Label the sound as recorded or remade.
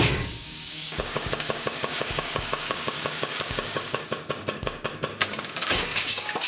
remade